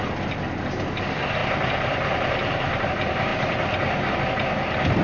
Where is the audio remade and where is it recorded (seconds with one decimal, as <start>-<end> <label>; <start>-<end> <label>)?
0.0-1.4 recorded; 1.4-2.9 remade; 2.9-5.0 recorded